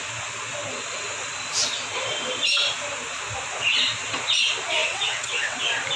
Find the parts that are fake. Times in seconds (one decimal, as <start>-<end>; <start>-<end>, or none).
4.8-5.6